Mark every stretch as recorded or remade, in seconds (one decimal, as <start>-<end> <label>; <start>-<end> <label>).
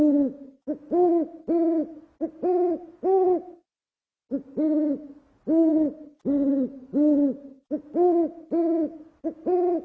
0.0-9.8 recorded